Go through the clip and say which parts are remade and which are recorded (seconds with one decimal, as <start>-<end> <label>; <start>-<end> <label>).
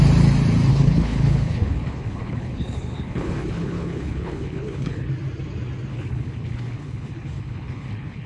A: 0.0-0.7 recorded; 0.7-5.1 remade; 5.1-5.9 recorded; 5.9-8.3 remade